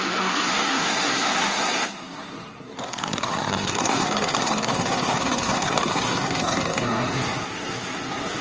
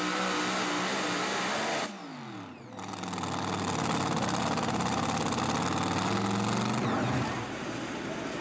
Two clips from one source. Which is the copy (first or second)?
first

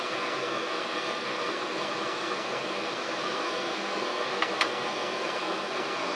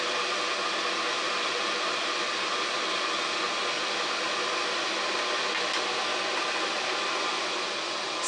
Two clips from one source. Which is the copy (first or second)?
first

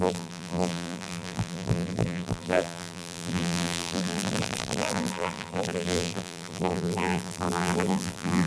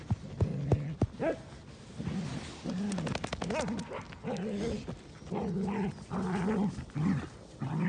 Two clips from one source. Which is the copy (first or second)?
first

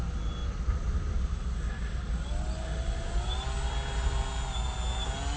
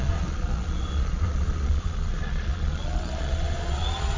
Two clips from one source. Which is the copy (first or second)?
second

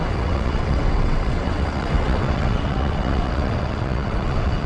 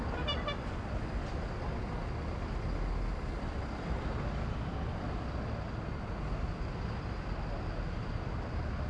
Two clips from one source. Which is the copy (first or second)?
first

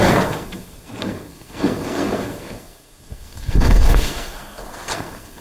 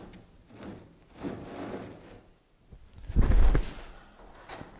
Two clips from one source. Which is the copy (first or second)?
first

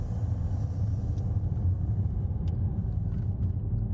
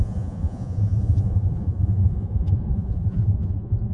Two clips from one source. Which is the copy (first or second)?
second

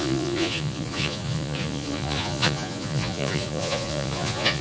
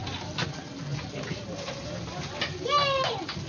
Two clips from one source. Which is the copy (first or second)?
first